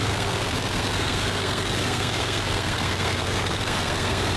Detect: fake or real fake